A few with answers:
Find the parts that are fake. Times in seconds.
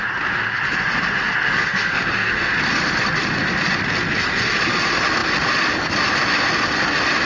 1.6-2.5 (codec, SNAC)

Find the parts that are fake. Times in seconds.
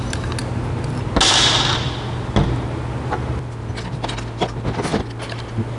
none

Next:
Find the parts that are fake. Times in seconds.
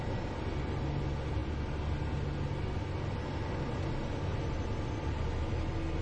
none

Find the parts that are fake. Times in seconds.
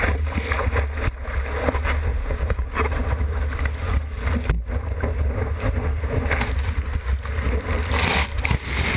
2.1-2.7 (vocoder, Vocos)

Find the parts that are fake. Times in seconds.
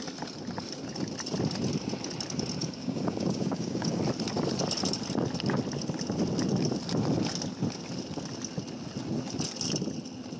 2.6-4.0 (codec, DAC)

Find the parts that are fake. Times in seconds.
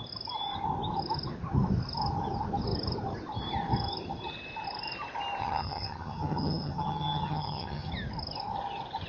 5.4-7.9 (vocoder, HiFi-GAN)